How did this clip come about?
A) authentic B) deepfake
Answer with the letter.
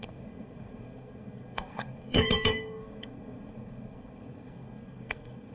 B